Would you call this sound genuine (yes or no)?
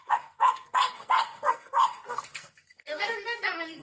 no